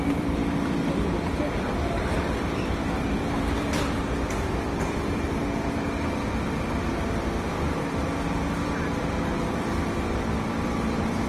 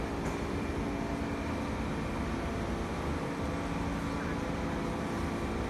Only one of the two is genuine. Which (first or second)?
second